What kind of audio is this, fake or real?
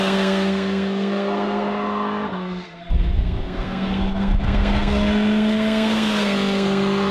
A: fake